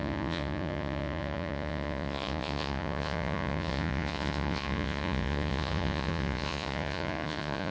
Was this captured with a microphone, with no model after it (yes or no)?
no